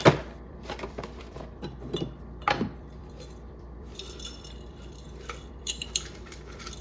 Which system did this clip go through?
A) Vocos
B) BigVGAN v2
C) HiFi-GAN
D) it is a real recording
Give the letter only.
B